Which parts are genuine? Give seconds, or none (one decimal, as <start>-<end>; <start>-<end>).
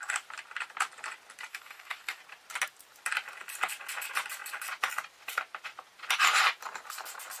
0.0-1.5; 2.2-7.4